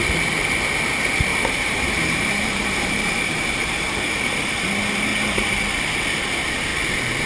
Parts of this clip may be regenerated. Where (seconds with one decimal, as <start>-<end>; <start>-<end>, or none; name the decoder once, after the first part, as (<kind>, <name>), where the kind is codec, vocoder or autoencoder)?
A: 1.3-3.4 (vocoder, BigVGAN v2); 5.1-5.7